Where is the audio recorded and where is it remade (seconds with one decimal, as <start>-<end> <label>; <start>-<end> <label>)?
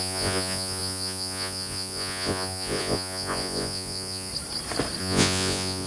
0.0-4.3 remade; 4.3-5.0 recorded; 5.0-5.9 remade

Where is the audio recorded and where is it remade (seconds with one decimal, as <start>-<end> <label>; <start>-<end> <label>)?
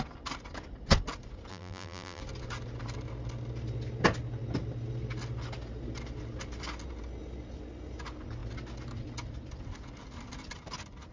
0.0-1.5 recorded; 1.5-2.2 remade; 2.2-11.1 recorded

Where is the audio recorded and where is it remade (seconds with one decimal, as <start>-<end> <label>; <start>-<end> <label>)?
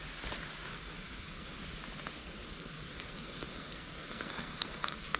0.0-0.7 recorded; 0.7-1.6 remade; 1.6-2.2 recorded; 2.2-5.2 remade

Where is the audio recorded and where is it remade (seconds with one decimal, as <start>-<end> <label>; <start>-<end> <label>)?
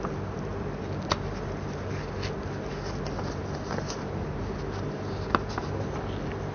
0.0-0.5 recorded; 0.5-1.6 remade; 1.6-6.5 recorded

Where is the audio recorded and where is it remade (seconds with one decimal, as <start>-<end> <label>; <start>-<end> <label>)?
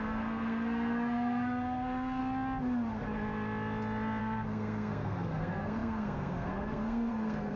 0.0-2.2 remade; 2.2-4.2 recorded; 4.2-7.6 remade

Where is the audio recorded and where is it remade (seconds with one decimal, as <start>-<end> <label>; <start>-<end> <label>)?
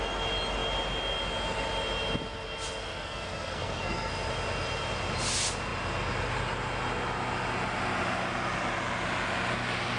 0.0-2.8 recorded; 2.8-4.1 remade; 4.1-10.0 recorded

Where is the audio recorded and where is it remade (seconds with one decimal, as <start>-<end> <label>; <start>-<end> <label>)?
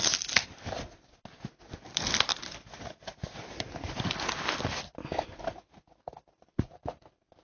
0.0-7.4 recorded